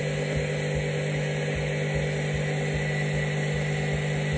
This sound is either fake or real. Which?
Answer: real